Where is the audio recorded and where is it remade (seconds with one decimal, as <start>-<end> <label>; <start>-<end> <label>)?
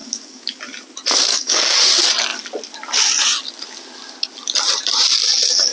0.0-0.6 remade; 0.6-1.3 recorded; 1.3-1.8 remade; 1.8-5.7 recorded